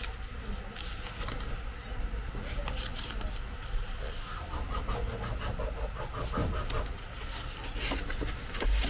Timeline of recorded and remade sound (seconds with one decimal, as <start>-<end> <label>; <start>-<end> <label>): 0.0-8.9 recorded